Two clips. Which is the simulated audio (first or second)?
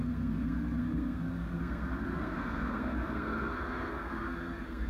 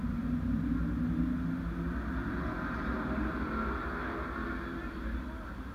first